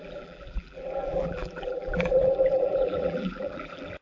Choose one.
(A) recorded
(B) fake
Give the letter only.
B